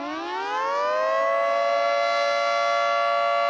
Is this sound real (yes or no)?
yes